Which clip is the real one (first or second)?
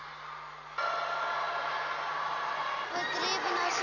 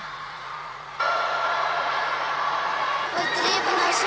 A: first